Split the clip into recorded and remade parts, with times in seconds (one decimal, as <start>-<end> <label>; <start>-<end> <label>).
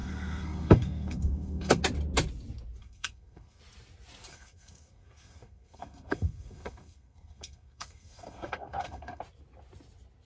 0.0-1.8 remade; 1.8-2.8 recorded; 2.8-3.6 remade; 3.6-4.3 recorded; 4.3-9.2 remade; 9.2-10.2 recorded